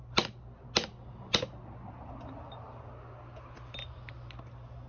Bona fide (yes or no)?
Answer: yes